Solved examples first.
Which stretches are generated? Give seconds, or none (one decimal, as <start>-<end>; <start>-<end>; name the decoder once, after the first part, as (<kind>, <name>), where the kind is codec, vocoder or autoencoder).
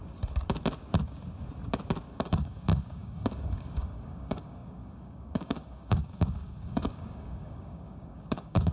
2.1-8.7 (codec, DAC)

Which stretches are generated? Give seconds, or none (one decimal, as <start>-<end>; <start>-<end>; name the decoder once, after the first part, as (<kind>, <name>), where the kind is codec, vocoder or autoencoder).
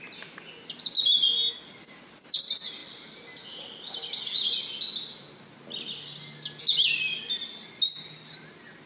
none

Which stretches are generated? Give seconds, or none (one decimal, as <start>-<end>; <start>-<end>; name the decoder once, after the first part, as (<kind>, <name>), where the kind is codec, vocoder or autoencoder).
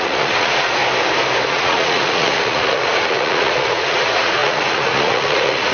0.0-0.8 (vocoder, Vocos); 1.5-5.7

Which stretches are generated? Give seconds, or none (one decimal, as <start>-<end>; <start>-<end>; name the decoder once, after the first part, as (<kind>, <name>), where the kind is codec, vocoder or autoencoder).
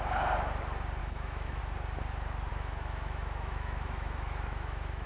1.0-1.6 (autoencoder, DAC-VAE); 2.5-5.1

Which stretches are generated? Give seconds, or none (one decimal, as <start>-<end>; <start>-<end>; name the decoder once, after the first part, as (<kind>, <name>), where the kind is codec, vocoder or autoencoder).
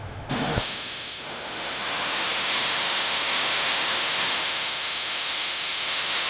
0.0-6.3 (autoencoder, DAC-VAE)